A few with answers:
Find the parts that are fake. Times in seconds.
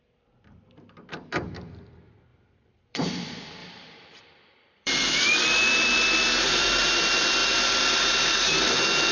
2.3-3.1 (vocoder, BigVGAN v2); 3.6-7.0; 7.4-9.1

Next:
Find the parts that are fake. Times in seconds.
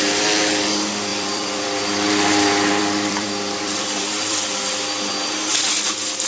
1.1-4.4 (vocoder, BigVGAN v2)